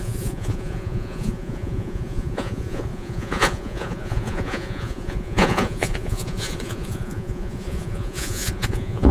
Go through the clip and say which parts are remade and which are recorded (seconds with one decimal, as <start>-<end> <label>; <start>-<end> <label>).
0.0-9.1 remade